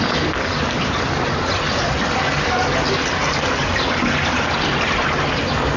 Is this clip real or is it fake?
real